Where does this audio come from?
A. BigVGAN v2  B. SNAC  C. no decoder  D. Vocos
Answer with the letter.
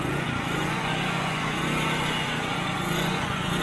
D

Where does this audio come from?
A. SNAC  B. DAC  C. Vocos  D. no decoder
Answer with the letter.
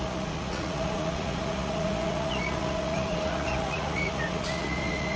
C